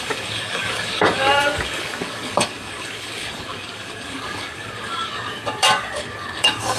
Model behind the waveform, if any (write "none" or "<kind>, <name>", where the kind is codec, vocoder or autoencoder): codec, DAC